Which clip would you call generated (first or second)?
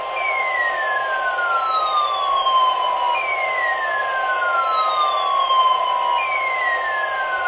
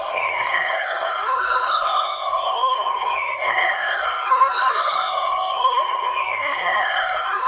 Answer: second